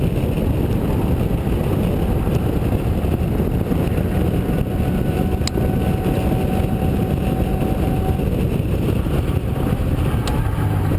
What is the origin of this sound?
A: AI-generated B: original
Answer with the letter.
B